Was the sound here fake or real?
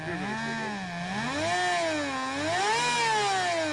real